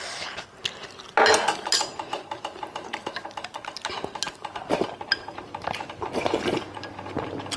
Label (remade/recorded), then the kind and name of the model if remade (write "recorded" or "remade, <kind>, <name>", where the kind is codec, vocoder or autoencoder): recorded